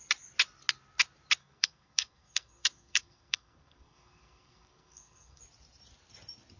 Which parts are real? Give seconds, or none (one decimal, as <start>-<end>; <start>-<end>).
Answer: 0.0-1.4; 5.4-6.6